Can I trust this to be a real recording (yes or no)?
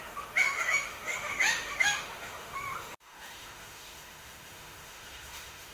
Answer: no